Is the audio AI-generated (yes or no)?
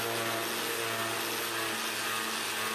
no